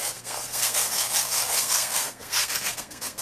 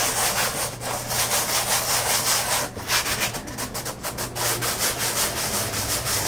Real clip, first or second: second